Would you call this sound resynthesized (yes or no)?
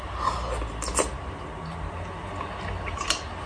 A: no